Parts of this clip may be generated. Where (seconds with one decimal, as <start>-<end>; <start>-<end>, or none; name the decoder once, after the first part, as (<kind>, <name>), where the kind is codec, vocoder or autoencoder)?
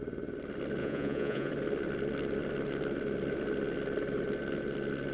0.8-1.5 (vocoder, Vocos)